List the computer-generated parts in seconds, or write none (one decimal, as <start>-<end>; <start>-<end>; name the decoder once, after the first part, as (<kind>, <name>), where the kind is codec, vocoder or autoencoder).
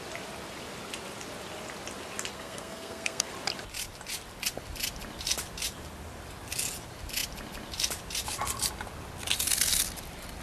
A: 2.3-3.3 (codec, SNAC)